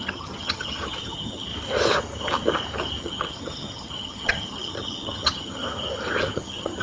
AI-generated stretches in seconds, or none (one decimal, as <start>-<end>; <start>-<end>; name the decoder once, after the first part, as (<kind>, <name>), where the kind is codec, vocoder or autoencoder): 0.0-1.5 (vocoder, HiFi-GAN); 3.0-5.6; 6.2-6.8